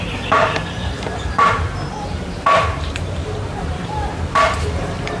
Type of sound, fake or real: fake